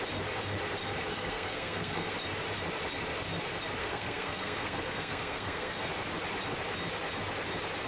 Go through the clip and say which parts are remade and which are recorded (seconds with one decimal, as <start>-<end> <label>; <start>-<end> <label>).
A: 0.0-1.1 recorded; 1.1-2.1 remade; 2.1-3.8 recorded; 3.8-5.9 remade; 5.9-7.9 recorded